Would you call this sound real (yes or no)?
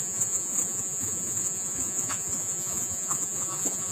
no